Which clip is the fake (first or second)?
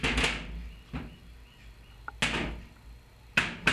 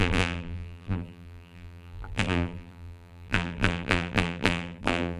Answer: second